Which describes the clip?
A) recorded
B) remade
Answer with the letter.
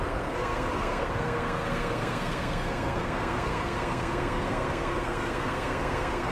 B